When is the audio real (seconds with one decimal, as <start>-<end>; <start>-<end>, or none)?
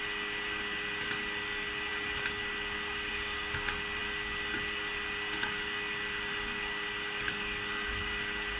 0.0-8.6